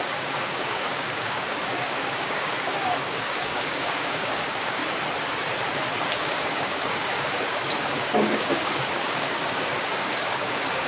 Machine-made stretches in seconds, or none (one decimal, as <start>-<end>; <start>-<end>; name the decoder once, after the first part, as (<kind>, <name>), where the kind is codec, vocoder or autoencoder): 0.0-4.8 (codec, DAC); 6.2-10.9